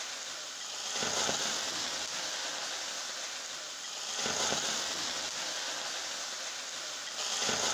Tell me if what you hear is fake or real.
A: real